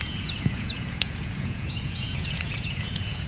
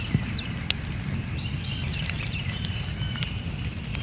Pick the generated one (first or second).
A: first